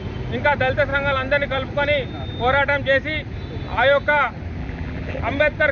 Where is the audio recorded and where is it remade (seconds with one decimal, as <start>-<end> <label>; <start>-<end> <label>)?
0.0-4.6 recorded; 4.6-5.2 remade; 5.2-5.7 recorded